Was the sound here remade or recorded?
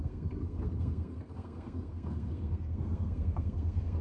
remade